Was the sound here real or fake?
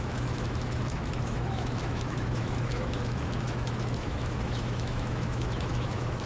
fake